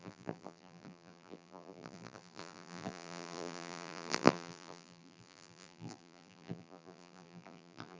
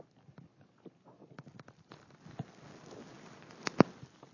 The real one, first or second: second